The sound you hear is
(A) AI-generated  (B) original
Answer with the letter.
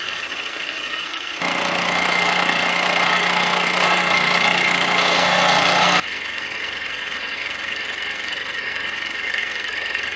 A